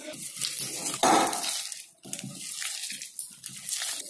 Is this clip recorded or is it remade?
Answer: recorded